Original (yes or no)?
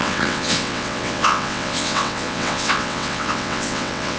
no